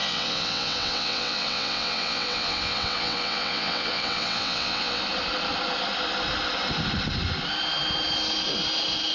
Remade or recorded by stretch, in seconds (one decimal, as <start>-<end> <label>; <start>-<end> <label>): 0.0-5.0 remade; 5.0-9.1 recorded